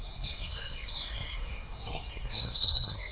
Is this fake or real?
fake